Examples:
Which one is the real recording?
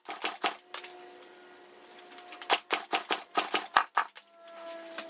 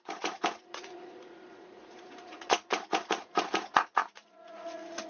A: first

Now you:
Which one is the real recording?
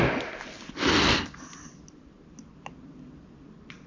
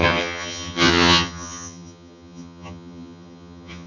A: first